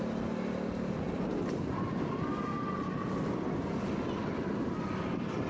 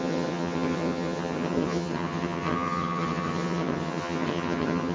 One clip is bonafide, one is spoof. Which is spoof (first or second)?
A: second